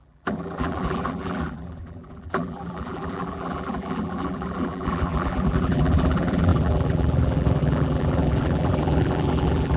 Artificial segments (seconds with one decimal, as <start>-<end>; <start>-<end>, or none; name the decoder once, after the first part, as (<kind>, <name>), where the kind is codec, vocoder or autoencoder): 0.0-9.8 (vocoder, BigVGAN v2)